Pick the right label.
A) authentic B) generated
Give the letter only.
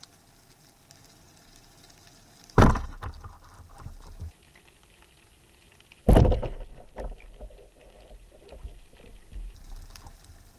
A